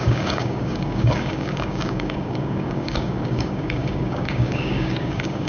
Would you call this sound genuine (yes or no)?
no